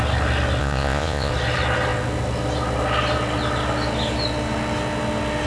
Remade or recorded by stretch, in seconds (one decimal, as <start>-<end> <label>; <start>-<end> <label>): 0.0-0.6 recorded; 0.6-1.3 remade; 1.3-5.5 recorded